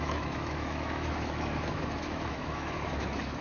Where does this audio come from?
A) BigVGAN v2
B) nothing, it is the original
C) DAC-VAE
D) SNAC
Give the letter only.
C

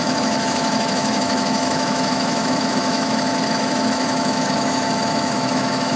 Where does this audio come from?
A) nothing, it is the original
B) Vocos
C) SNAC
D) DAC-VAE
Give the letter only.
D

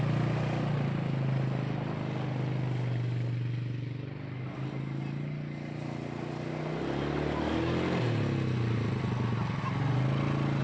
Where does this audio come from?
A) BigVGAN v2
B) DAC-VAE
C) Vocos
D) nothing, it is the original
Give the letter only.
D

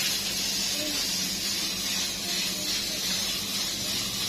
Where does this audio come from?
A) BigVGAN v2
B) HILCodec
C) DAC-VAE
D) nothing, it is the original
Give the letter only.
D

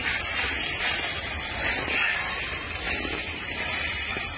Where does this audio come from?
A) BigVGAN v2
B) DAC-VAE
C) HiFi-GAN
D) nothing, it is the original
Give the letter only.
D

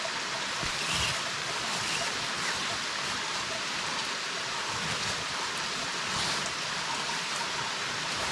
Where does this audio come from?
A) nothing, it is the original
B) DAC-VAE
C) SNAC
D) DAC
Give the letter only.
A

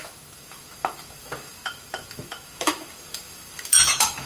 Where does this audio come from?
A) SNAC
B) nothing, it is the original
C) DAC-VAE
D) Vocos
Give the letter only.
C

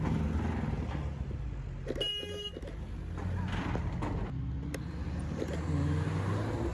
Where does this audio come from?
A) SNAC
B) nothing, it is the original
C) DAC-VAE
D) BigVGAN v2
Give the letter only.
B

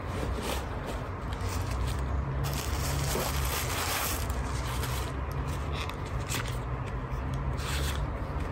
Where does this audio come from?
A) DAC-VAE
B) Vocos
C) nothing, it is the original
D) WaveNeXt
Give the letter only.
C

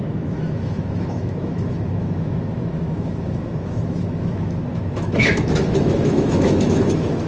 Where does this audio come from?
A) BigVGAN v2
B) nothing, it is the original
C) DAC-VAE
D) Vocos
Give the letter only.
C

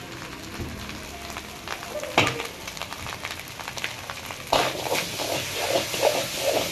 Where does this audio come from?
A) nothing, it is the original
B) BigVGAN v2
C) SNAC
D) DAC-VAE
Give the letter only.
A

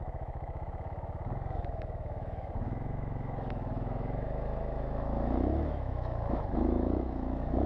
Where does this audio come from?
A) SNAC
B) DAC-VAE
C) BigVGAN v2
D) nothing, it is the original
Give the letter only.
B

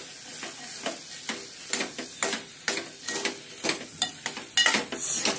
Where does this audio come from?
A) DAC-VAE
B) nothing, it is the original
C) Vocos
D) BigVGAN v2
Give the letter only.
B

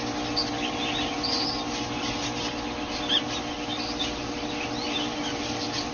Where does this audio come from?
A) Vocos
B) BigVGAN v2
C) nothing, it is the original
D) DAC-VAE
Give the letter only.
C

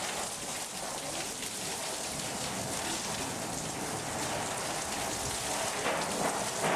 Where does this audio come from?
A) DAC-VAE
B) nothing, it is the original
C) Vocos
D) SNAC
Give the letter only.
B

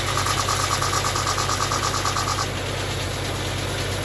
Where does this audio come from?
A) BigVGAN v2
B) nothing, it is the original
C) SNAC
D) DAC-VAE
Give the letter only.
B